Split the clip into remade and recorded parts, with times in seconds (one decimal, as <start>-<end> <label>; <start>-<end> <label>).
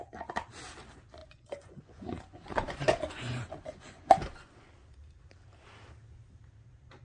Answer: 0.0-1.2 recorded; 1.2-4.7 remade; 4.7-7.0 recorded